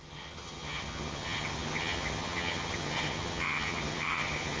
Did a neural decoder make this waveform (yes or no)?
yes